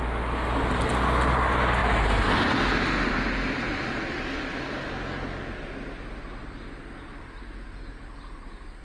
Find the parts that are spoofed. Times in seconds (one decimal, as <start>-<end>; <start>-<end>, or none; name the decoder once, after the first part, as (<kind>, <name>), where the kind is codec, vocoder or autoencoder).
none